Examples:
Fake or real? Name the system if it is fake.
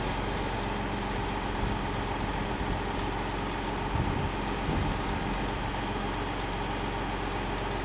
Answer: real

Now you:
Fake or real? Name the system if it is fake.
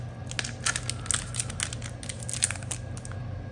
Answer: real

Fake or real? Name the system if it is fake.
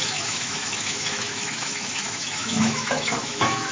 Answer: fake, autoencoder, DAC-VAE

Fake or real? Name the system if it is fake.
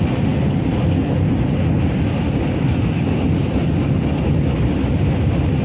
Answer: real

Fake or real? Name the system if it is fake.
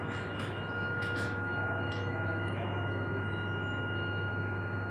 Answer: fake, autoencoder, DAC-VAE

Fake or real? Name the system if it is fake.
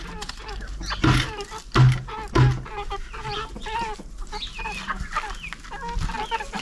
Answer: real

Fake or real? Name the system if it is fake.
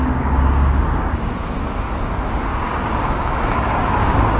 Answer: fake, codec, DAC